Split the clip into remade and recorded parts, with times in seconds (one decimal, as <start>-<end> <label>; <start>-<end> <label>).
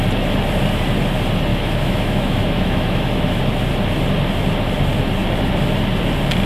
0.0-1.5 recorded; 1.5-3.4 remade; 3.4-6.5 recorded